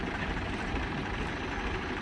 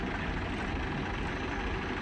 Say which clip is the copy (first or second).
first